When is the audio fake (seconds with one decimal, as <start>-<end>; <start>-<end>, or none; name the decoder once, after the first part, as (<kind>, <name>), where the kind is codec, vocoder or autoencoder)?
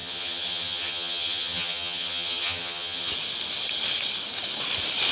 0.0-3.1 (vocoder, HiFi-GAN)